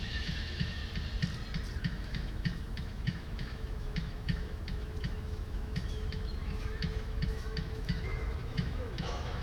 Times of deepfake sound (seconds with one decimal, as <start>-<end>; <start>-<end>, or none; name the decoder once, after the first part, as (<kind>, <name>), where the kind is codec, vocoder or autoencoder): 0.0-0.8 (autoencoder, DAC-VAE); 1.8-9.4